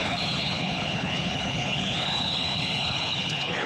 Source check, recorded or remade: remade